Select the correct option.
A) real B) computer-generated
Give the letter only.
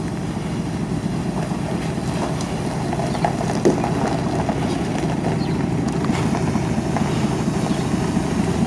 A